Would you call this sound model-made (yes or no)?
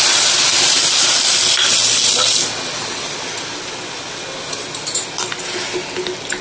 no